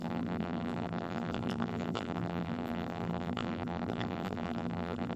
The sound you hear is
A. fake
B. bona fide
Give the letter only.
A